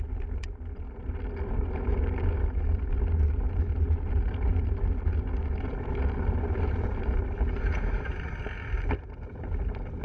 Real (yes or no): yes